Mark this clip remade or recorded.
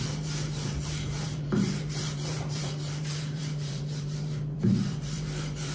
remade